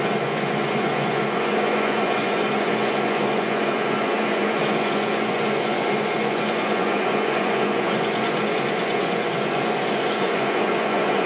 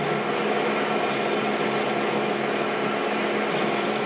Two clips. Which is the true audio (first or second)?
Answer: second